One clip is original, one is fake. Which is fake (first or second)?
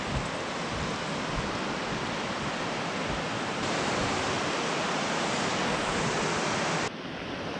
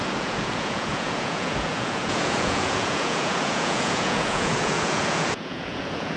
second